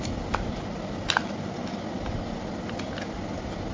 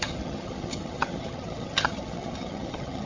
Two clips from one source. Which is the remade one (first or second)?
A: second